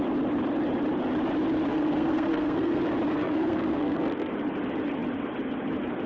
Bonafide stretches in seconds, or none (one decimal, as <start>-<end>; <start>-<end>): 0.0-1.7; 2.8-3.2; 4.3-6.1